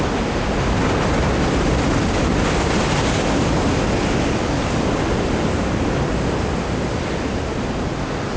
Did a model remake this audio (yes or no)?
no